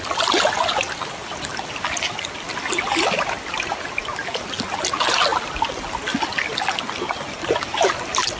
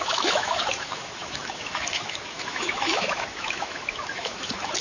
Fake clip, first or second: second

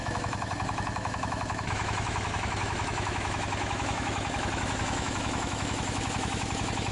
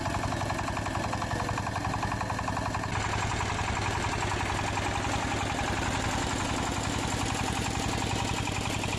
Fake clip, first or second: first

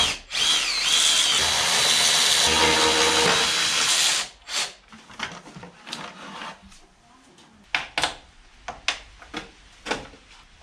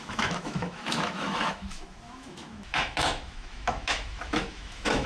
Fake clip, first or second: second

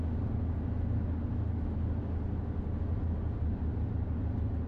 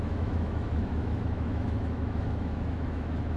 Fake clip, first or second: second